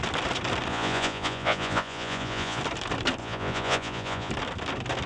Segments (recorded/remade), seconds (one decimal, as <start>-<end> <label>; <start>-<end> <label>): 0.0-0.7 recorded; 0.7-2.6 remade; 2.6-3.2 recorded; 3.2-4.3 remade; 4.3-5.1 recorded